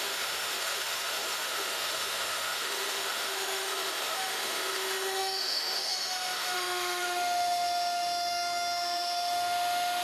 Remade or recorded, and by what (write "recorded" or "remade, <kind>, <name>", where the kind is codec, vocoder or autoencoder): remade, autoencoder, DAC-VAE